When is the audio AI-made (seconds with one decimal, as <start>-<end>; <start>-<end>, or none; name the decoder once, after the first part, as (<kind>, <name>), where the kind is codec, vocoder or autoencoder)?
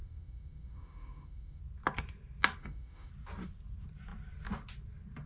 0.0-1.6 (autoencoder, DAC-VAE); 2.6-3.1